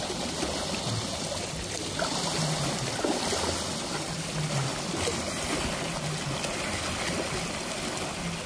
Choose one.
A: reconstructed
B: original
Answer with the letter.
B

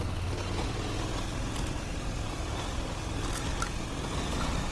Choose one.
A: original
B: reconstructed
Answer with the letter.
A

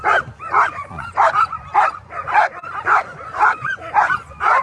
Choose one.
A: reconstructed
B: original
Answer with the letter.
A